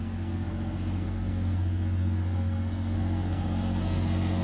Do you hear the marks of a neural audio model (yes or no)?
yes